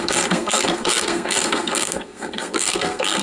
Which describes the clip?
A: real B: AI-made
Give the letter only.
B